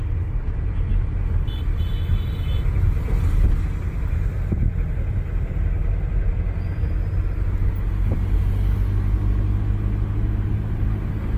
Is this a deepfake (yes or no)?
no